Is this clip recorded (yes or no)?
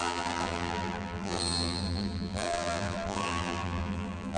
no